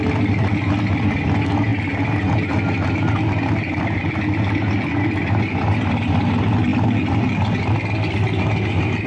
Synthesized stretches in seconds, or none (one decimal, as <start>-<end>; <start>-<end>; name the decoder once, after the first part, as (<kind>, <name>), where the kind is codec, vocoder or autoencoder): none